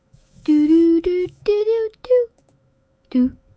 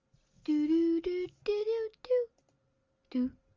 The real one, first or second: second